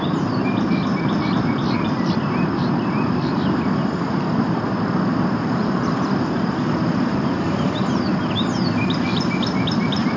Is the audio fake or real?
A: fake